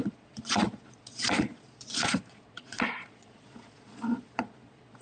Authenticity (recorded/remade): remade